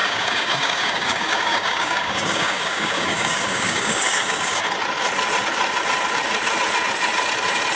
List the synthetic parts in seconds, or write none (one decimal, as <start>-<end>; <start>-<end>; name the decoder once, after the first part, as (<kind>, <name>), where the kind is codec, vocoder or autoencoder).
0.0-4.6 (codec, DAC)